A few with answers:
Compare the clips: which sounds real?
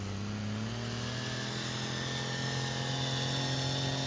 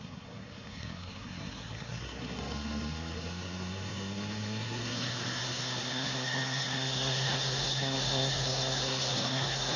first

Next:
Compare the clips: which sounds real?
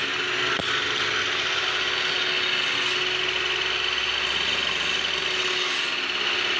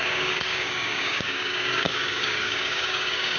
first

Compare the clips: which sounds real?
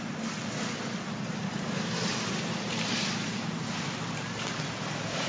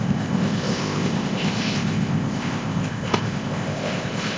first